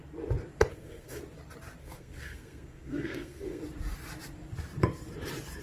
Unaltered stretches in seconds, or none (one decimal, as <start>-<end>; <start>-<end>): 0.0-0.7; 1.2-1.8; 3.6-5.6